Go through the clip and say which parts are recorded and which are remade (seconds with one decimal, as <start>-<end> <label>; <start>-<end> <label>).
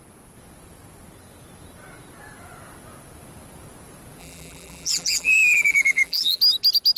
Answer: 0.0-4.2 recorded; 4.2-6.4 remade; 6.4-7.0 recorded